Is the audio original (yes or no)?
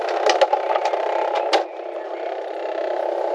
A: yes